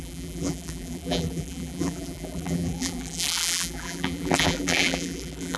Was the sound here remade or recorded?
remade